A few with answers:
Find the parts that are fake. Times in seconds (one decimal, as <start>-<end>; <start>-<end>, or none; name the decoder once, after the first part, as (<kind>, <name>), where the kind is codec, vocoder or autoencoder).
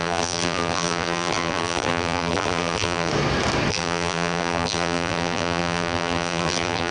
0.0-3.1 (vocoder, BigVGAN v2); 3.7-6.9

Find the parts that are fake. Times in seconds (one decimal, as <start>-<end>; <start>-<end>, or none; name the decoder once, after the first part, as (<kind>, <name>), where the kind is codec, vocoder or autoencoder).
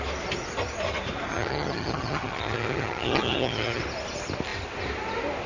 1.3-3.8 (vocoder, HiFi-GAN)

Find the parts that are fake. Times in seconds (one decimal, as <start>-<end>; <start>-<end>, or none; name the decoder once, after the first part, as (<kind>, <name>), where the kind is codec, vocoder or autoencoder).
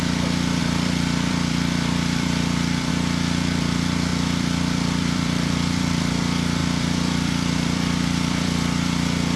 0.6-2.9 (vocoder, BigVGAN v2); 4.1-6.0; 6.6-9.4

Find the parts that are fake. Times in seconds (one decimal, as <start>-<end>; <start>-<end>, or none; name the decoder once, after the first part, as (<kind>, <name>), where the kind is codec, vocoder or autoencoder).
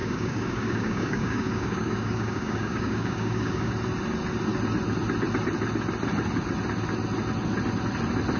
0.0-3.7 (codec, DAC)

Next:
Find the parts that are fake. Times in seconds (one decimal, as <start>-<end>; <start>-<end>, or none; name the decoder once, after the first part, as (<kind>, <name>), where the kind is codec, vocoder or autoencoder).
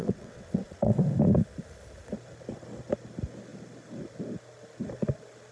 0.0-1.0 (vocoder, WaveNeXt)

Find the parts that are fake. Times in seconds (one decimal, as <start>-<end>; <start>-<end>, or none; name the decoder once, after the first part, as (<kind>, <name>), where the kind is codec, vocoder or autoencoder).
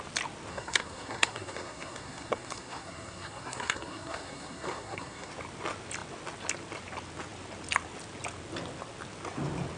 0.5-5.3 (codec, SNAC)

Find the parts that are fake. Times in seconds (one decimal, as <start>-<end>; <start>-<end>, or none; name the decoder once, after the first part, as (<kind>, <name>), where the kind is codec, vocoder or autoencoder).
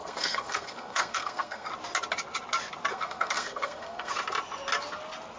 0.0-1.7 (codec, SNAC); 2.9-4.1